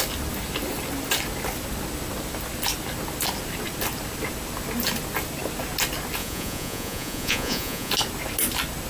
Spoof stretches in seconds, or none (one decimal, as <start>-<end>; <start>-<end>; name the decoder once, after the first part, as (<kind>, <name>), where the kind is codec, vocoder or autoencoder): 6.2-7.9 (vocoder, Vocos)